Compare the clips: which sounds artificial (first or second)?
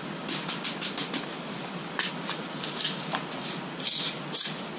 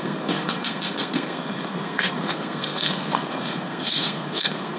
second